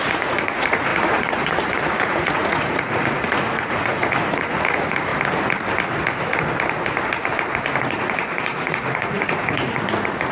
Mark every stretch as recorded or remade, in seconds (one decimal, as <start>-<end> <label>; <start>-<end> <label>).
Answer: 0.0-5.1 remade; 5.1-7.8 recorded; 7.8-10.3 remade